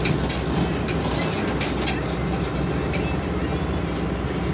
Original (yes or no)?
yes